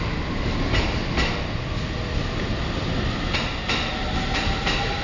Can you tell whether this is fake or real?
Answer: real